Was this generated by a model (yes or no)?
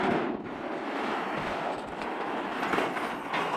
no